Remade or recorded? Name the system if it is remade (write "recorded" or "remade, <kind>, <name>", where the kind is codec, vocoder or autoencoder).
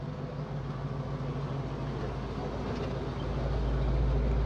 recorded